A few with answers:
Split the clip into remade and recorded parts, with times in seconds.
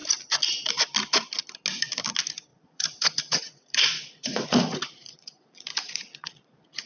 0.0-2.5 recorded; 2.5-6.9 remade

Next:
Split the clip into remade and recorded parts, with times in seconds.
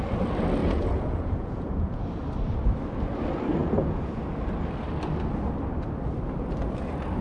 0.0-0.6 recorded; 0.6-2.0 remade; 2.0-3.6 recorded; 3.6-4.2 remade; 4.2-7.2 recorded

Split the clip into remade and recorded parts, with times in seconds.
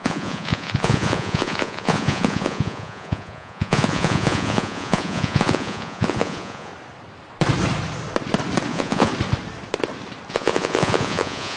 0.0-6.7 remade; 6.7-8.7 recorded; 8.7-9.1 remade; 9.1-10.3 recorded; 10.3-11.6 remade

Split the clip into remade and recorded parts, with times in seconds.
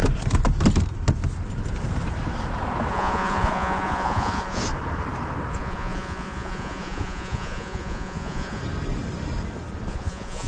0.0-2.9 recorded; 2.9-4.6 remade; 4.6-5.5 recorded; 5.5-8.6 remade; 8.6-9.9 recorded; 9.9-10.5 remade